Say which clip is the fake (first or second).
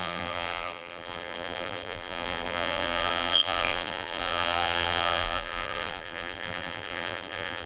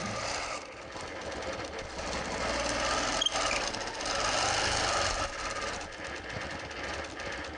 first